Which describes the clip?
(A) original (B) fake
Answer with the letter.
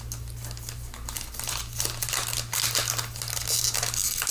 A